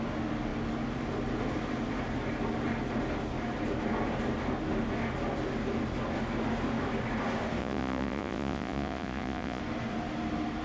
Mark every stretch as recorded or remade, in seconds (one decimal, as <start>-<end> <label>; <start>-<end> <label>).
0.0-7.6 recorded; 7.6-9.6 remade; 9.6-10.6 recorded